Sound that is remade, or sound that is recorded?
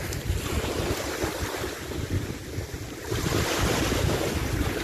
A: recorded